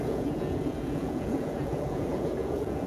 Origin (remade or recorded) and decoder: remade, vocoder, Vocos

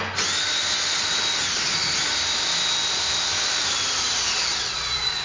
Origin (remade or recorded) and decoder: recorded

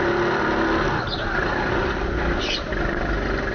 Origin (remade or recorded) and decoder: recorded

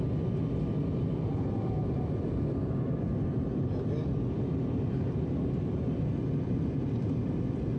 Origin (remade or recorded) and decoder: recorded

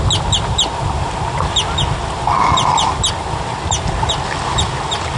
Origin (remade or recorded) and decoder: recorded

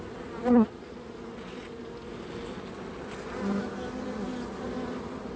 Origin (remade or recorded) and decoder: recorded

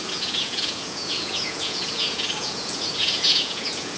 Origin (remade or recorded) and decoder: remade, vocoder, Vocos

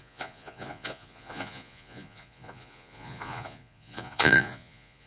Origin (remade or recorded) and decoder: remade, vocoder, Vocos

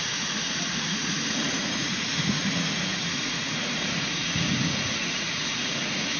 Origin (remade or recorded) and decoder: remade, vocoder, Vocos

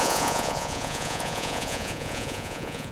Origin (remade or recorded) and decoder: remade, vocoder, Vocos